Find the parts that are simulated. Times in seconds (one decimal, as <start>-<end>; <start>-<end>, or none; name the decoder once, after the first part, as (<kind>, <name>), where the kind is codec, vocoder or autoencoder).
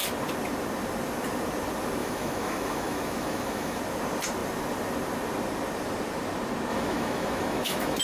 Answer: 2.0-3.8 (autoencoder, DAC-VAE); 6.7-8.0